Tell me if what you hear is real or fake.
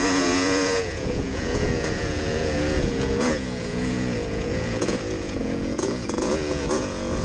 fake